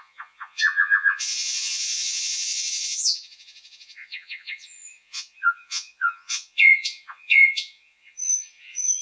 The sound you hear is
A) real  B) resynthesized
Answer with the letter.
B